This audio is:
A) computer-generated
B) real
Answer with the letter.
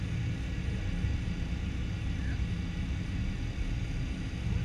B